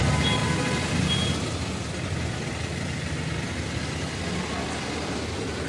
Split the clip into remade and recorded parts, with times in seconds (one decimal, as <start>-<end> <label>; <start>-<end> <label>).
0.0-5.7 recorded